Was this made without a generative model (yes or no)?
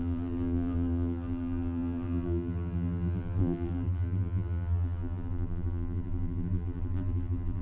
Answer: no